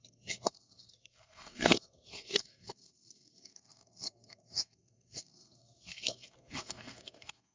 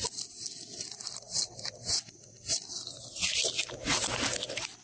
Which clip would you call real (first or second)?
second